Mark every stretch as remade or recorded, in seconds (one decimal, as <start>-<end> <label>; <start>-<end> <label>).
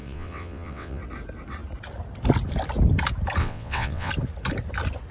0.0-1.0 remade; 1.0-3.4 recorded; 3.4-4.1 remade; 4.1-5.1 recorded